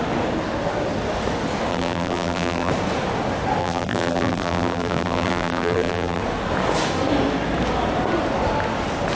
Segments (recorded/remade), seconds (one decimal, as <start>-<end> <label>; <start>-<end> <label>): 0.0-1.7 recorded; 1.7-2.7 remade; 2.7-3.6 recorded; 3.6-6.2 remade; 6.2-9.2 recorded